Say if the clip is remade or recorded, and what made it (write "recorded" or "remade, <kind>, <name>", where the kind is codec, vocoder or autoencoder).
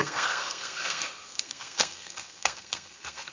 remade, codec, SNAC